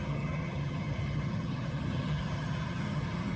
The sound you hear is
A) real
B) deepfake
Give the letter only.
B